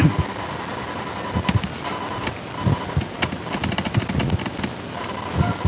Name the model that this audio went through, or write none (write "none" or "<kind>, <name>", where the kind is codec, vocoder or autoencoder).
none